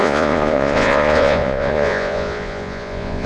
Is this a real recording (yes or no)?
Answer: no